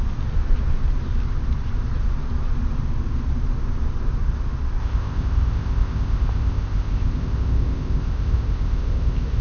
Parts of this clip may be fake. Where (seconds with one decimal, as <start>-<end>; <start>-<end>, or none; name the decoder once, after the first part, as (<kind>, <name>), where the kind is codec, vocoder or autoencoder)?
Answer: 4.8-9.4 (codec, ZipCodec)